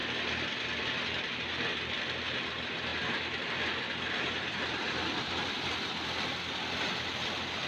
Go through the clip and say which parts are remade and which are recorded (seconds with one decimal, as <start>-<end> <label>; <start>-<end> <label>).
0.0-1.2 remade; 1.2-2.9 recorded; 2.9-6.8 remade; 6.8-7.7 recorded